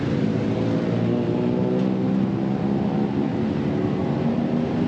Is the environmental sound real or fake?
real